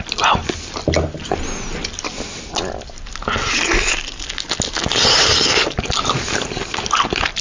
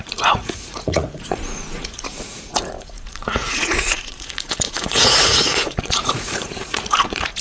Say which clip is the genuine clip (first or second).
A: first